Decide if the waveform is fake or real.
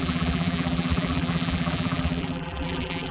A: fake